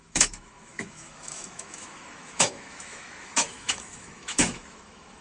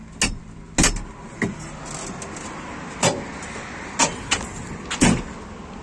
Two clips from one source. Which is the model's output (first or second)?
first